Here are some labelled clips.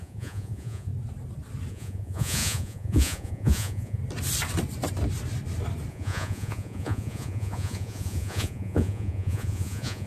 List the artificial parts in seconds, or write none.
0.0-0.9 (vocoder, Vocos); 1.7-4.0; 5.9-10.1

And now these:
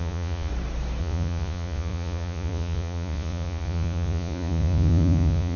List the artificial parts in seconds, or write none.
0.0-0.5 (vocoder, Vocos); 1.0-5.6